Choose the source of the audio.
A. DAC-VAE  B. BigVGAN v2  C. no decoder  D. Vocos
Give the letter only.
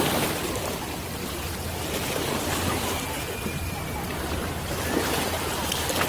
C